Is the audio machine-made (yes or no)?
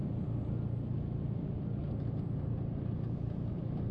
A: no